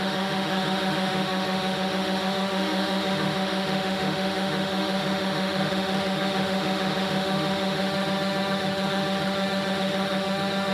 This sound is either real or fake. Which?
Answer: fake